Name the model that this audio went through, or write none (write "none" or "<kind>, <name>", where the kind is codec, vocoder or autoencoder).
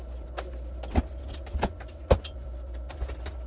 none